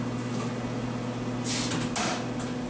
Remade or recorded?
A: recorded